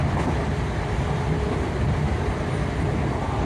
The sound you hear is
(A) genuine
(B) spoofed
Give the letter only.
A